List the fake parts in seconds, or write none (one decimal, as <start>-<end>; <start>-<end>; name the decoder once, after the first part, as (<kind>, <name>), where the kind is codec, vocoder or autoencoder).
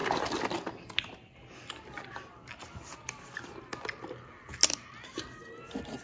none